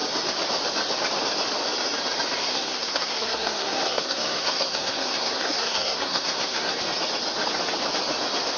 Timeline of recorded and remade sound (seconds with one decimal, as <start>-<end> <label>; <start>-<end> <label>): 0.0-2.4 recorded; 2.4-6.8 remade; 6.8-8.6 recorded

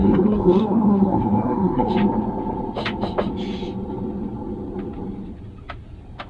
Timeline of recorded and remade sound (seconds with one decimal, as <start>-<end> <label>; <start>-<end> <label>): 0.0-1.9 remade; 1.9-6.3 recorded

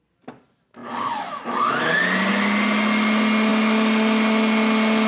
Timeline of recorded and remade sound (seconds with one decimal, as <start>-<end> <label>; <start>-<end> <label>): 0.0-5.1 recorded

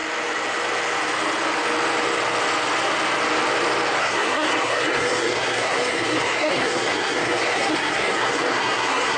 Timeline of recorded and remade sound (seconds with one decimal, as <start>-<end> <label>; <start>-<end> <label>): 0.0-4.0 recorded; 4.0-9.2 remade

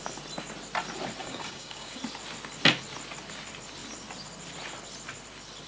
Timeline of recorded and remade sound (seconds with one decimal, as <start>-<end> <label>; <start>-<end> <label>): 0.0-1.2 recorded; 1.2-2.0 remade; 2.0-5.7 recorded

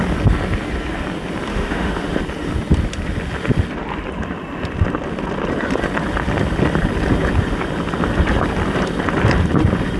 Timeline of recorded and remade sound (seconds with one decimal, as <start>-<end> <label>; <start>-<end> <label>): 0.0-1.5 recorded; 1.5-2.2 remade; 2.2-10.0 recorded

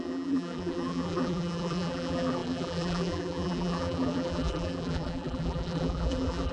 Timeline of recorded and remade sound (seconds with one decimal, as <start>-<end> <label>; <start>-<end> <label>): 0.0-6.5 remade